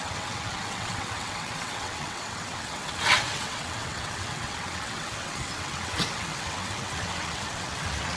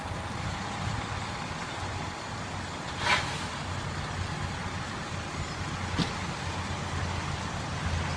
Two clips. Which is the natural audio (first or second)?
second